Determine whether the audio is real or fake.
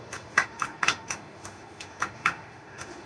fake